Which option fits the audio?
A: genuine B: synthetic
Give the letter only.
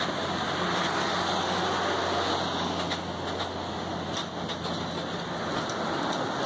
A